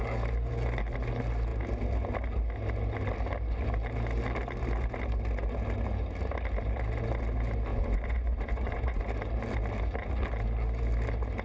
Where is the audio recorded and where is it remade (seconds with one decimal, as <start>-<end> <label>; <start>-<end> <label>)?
0.0-7.7 recorded; 7.7-9.0 remade; 9.0-11.4 recorded